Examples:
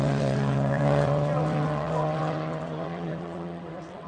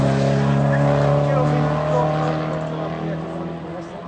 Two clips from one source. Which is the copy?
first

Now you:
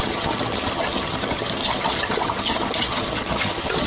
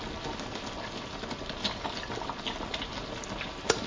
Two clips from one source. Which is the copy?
first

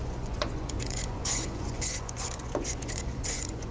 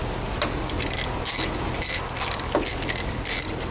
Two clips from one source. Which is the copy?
first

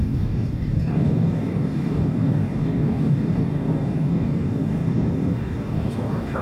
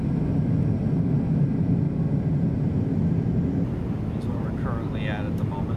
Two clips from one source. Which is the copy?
first